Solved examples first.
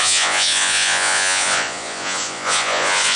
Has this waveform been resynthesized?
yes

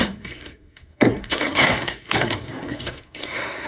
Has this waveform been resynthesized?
yes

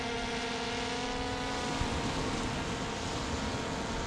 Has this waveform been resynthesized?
no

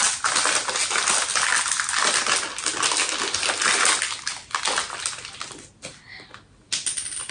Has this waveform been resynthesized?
no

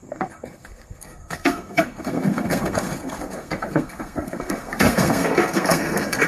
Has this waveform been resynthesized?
yes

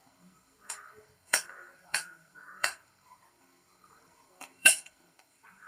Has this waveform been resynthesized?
yes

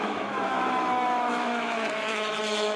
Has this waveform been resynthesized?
yes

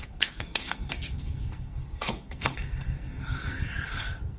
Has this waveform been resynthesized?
yes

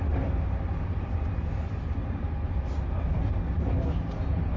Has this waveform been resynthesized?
no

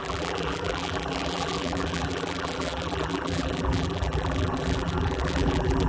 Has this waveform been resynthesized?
yes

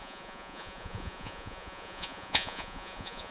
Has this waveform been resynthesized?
yes